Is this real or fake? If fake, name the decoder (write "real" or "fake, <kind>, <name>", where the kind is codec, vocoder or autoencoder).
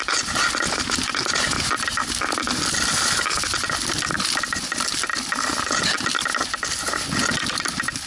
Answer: real